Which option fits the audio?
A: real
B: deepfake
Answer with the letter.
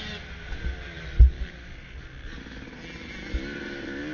A